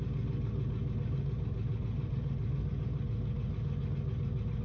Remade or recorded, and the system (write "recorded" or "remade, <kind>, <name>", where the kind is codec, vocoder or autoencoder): recorded